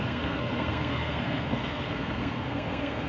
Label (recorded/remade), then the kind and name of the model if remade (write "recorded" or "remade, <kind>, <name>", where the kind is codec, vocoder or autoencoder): remade, codec, SNAC